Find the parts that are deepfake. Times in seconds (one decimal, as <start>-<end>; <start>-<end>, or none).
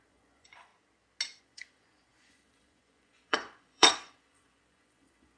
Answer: 0.0-0.7; 1.4-5.4